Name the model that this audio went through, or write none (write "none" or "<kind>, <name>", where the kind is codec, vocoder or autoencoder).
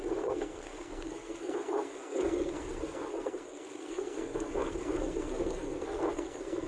codec, SNAC